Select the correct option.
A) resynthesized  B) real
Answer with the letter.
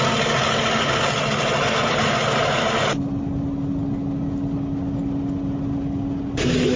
B